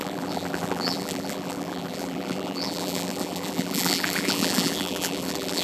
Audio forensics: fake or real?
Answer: fake